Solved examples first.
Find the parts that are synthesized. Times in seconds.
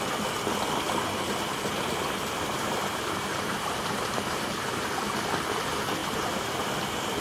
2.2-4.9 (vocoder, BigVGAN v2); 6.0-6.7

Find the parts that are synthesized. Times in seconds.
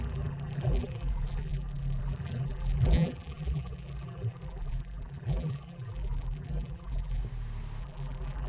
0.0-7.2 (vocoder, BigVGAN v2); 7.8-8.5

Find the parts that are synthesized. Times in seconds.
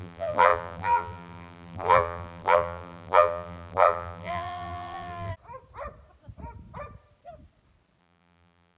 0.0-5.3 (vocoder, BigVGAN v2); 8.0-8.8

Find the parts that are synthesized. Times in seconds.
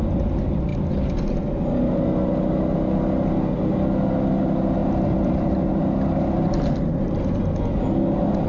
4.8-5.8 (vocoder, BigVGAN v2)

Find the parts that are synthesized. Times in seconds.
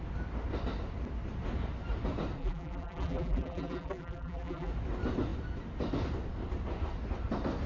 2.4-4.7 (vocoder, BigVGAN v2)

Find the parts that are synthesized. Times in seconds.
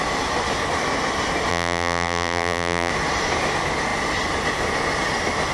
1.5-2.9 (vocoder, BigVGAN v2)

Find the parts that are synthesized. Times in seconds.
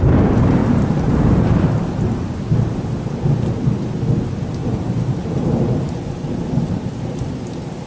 0.6-1.7 (vocoder, BigVGAN v2); 4.6-5.6